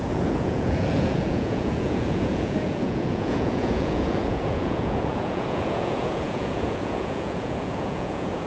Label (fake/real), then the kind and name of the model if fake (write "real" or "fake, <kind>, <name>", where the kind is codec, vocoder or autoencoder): fake, vocoder, Vocos